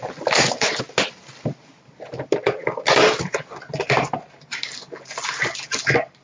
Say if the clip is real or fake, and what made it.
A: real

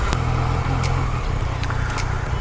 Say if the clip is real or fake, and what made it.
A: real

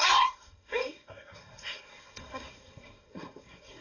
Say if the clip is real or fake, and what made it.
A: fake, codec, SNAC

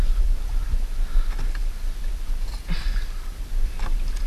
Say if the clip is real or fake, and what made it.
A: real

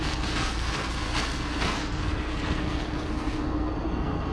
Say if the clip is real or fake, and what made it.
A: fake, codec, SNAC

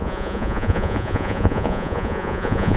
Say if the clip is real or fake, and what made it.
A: fake, vocoder, Vocos